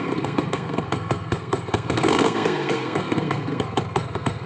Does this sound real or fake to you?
fake